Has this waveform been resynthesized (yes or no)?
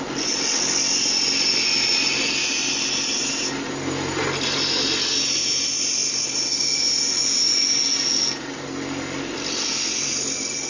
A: no